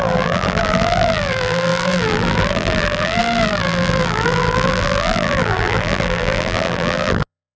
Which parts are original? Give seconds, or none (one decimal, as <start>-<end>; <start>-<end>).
none